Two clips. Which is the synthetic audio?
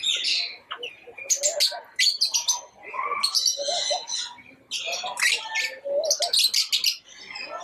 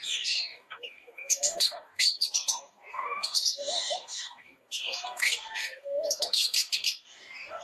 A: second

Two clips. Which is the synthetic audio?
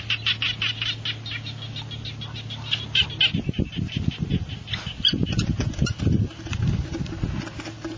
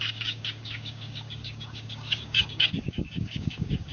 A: second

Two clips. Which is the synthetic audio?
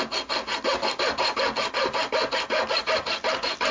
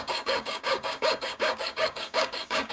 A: second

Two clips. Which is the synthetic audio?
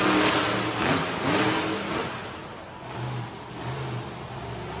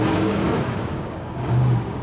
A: second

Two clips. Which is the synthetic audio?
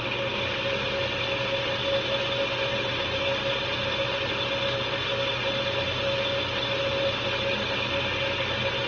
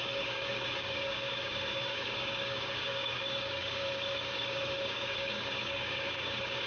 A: second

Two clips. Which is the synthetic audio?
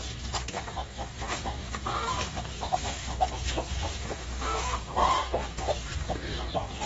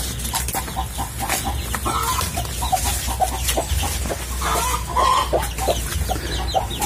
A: first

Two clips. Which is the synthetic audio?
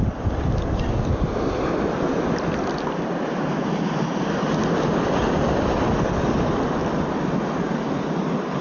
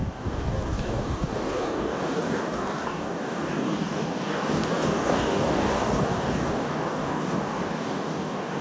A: second